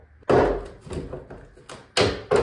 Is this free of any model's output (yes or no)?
yes